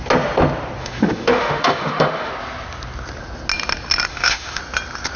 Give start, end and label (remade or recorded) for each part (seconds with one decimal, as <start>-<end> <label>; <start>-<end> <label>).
0.0-0.8 recorded; 0.8-2.3 remade; 2.3-4.1 recorded; 4.1-4.6 remade; 4.6-5.2 recorded